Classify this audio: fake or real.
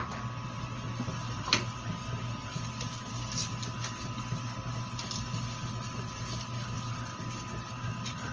real